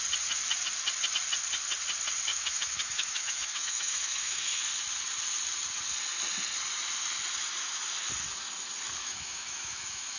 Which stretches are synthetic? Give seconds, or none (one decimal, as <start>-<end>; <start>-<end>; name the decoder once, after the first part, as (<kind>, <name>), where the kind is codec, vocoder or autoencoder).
2.3-4.6 (autoencoder, DAC-VAE); 9.0-10.2